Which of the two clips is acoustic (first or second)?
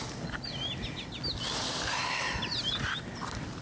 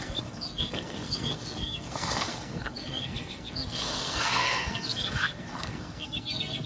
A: first